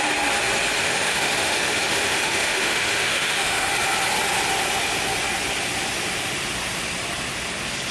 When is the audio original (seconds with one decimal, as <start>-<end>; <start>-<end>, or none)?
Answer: 0.0-0.8; 3.7-7.9